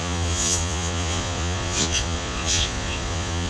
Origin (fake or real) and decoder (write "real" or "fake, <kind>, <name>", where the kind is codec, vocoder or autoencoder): fake, vocoder, Vocos